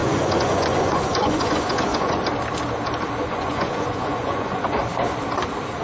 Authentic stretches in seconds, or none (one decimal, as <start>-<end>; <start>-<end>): 2.2-3.2; 4.8-5.8